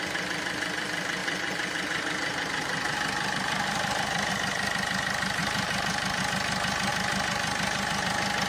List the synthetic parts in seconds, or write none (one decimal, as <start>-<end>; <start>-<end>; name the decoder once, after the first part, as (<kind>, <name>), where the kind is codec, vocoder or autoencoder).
1.2-4.3 (vocoder, BigVGAN v2); 5.4-6.2